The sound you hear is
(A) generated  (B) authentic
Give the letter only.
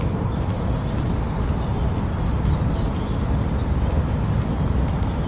B